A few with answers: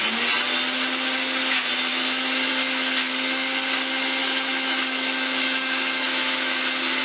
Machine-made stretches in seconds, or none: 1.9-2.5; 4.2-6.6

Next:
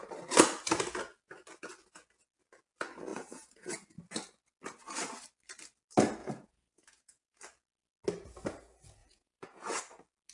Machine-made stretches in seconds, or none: 3.1-3.7; 6.2-7.4; 9.0-9.8